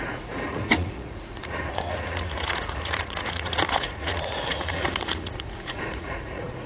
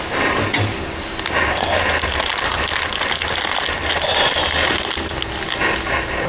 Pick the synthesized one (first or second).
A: first